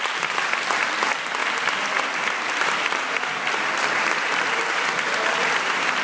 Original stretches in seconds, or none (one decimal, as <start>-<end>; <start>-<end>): none